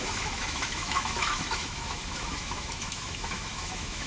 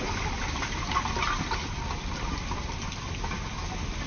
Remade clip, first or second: first